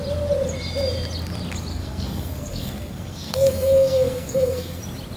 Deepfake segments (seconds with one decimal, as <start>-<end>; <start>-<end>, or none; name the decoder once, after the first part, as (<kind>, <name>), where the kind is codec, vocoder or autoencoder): 1.7-4.8 (codec, SNAC)